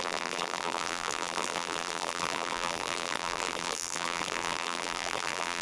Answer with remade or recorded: remade